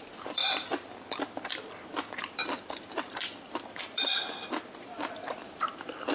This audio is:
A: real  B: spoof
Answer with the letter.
B